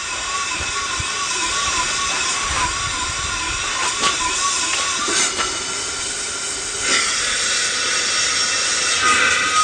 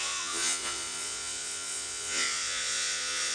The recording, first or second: first